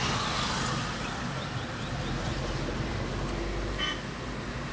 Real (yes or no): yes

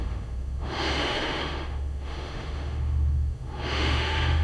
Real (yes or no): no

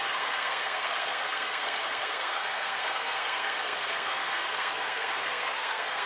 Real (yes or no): no